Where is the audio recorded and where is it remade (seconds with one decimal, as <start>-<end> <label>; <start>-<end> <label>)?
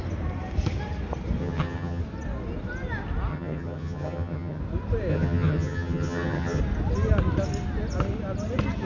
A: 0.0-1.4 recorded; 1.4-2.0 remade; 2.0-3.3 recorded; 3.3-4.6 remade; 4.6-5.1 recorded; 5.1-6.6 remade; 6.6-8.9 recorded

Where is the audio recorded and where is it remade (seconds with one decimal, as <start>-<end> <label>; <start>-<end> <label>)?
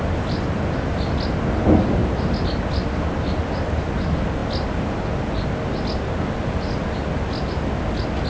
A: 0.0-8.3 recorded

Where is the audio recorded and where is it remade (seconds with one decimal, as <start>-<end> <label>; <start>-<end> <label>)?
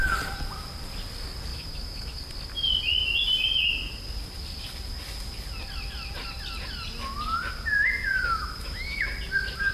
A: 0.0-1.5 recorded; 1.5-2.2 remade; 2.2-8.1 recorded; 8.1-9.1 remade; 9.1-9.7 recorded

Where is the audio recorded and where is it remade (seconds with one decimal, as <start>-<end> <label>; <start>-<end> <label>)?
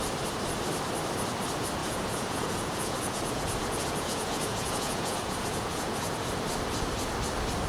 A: 0.0-1.8 recorded; 1.8-6.3 remade; 6.3-7.7 recorded